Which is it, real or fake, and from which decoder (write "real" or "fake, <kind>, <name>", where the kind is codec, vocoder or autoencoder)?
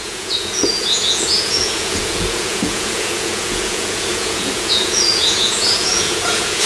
fake, vocoder, Vocos